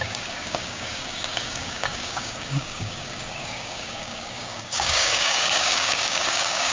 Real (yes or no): no